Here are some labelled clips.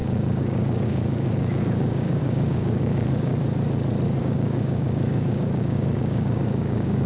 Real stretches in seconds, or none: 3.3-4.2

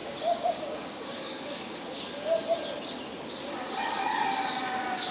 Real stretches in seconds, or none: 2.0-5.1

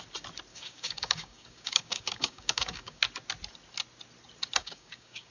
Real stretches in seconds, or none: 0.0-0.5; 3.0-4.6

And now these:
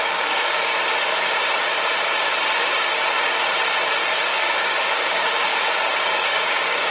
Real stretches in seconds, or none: 0.7-4.3; 5.5-6.3